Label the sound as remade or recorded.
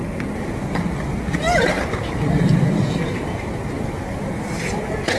recorded